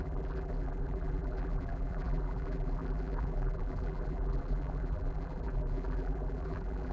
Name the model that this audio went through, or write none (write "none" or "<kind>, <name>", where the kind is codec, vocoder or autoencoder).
vocoder, BigVGAN v2